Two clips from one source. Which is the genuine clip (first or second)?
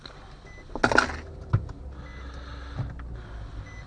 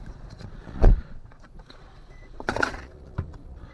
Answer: first